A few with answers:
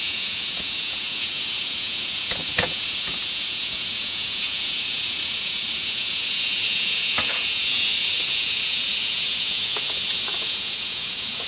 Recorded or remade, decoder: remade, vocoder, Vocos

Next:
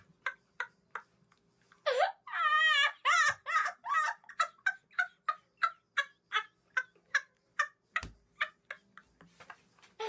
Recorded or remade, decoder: recorded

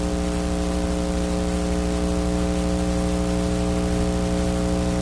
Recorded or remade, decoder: recorded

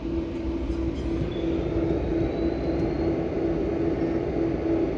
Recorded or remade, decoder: recorded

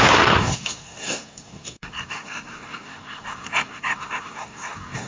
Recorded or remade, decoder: remade, codec, SNAC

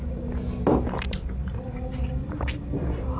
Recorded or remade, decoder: recorded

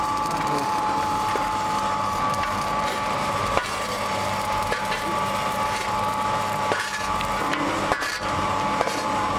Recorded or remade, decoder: remade, vocoder, BigVGAN v2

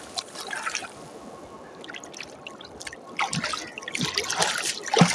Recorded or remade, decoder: recorded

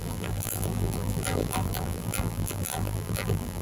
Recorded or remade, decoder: remade, vocoder, BigVGAN v2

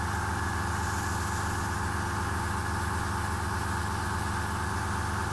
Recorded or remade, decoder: recorded